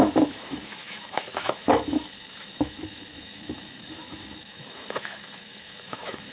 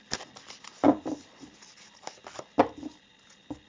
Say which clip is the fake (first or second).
first